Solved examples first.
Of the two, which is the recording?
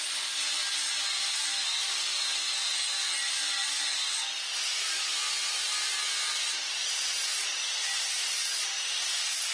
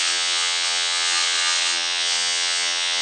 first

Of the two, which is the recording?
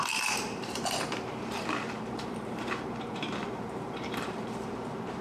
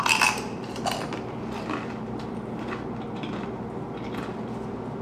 second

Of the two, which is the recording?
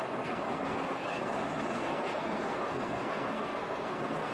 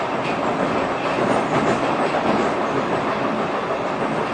second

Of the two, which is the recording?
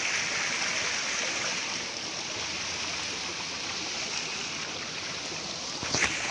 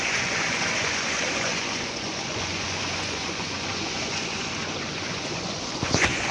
first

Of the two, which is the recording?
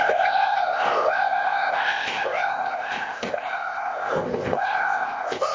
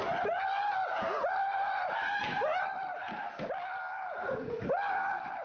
second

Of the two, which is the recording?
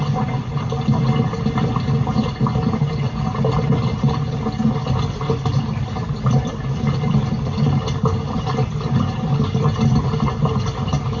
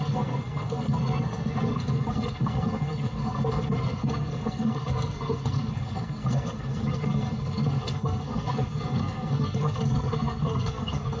first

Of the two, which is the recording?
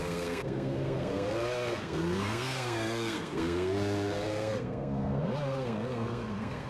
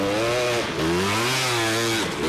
second